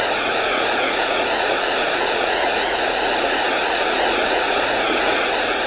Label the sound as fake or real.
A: fake